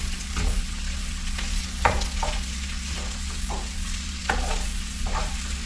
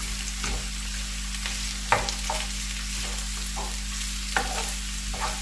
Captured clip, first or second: second